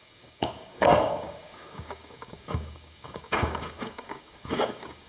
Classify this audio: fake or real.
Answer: fake